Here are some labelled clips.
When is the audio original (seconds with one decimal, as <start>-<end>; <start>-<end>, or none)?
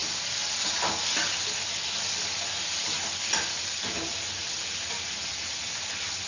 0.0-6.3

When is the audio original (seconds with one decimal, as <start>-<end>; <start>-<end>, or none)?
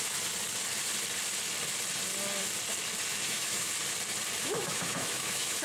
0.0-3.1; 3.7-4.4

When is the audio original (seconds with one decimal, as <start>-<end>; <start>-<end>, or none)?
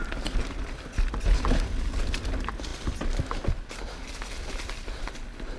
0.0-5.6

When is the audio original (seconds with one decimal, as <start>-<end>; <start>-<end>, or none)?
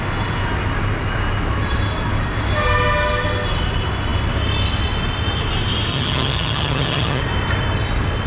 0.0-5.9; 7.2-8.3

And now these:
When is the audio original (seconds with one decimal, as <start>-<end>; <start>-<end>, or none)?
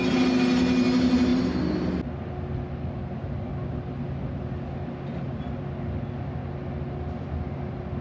0.0-8.0